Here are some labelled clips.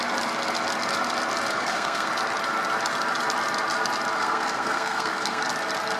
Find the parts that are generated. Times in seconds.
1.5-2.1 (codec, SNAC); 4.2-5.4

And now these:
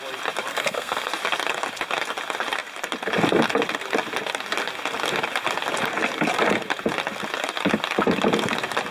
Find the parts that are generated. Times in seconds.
0.5-1.1 (codec, SNAC)

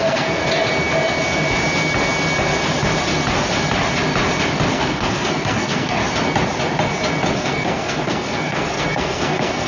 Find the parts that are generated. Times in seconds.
0.0-0.4 (codec, SNAC); 4.7-6.0; 7.4-9.7

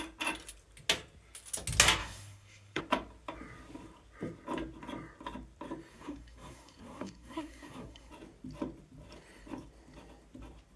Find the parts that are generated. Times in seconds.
2.0-2.8 (codec, SNAC); 5.9-8.1

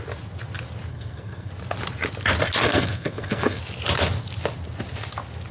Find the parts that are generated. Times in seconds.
0.9-1.5 (codec, SNAC); 2.6-3.6

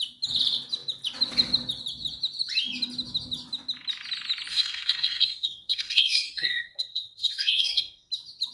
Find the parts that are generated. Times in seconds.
4.5-8.1 (codec, SNAC)